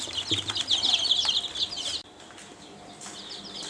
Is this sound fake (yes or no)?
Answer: no